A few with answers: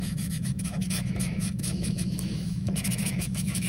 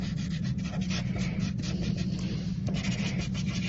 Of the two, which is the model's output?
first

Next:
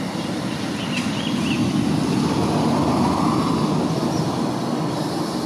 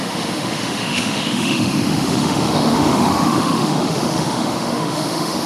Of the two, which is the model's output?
second